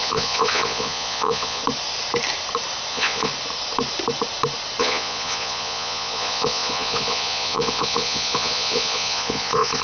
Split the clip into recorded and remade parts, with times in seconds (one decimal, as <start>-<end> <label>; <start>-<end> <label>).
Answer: 0.0-1.6 remade; 1.6-2.9 recorded; 2.9-3.3 remade; 3.3-4.8 recorded; 4.8-9.8 remade